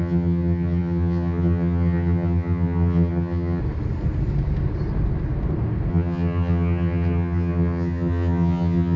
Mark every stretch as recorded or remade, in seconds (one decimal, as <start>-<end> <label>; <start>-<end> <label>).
0.0-3.6 remade; 3.6-5.9 recorded; 5.9-9.0 remade